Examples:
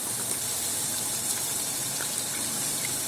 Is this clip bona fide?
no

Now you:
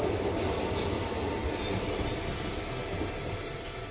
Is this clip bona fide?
yes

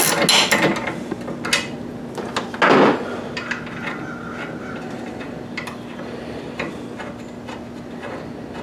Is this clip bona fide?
yes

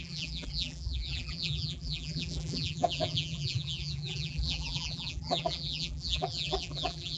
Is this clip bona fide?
no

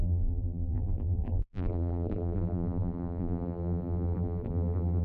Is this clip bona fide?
no